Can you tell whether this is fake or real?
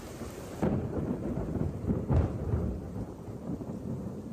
fake